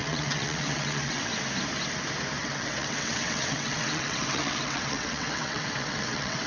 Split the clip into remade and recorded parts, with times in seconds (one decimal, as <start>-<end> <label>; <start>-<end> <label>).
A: 0.0-1.3 remade; 1.3-2.4 recorded; 2.4-6.5 remade